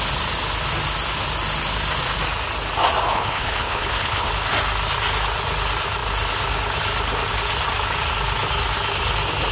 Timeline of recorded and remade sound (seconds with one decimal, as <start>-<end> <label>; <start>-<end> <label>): 0.0-3.1 recorded; 3.1-4.3 remade; 4.3-9.5 recorded